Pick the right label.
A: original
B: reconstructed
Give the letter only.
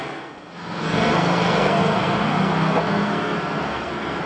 B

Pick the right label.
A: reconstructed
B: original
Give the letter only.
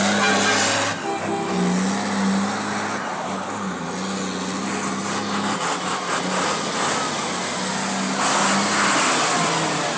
B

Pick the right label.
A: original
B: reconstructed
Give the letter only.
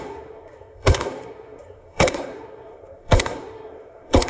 B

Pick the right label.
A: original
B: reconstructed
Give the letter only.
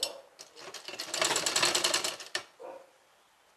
A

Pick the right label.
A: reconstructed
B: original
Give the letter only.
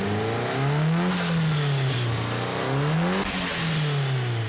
B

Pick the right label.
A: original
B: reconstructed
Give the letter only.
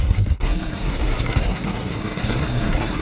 B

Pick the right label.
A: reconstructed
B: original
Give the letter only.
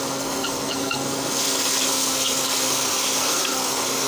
A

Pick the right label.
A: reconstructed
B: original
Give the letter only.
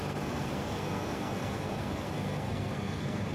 A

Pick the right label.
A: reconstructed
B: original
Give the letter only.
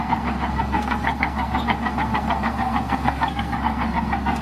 A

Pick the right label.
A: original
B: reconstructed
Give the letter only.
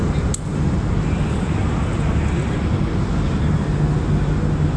A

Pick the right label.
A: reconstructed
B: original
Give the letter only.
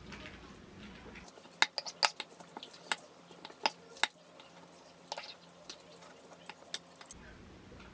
B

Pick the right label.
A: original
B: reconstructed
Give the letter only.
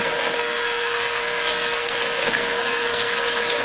B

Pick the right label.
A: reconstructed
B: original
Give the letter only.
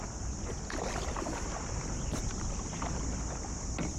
B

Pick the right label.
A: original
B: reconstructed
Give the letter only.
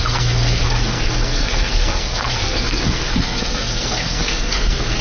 B